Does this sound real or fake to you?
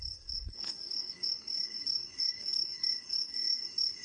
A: fake